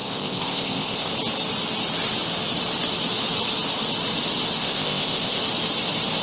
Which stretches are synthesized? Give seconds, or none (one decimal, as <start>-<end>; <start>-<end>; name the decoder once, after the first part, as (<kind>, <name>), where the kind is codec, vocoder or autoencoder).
0.0-1.1 (codec, ZipCodec); 4.6-5.4